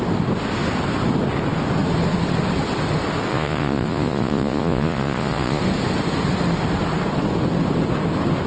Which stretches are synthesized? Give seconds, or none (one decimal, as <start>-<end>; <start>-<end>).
3.3-5.6